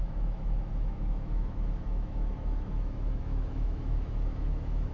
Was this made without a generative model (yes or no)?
no